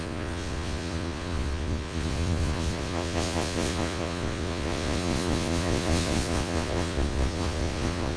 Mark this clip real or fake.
fake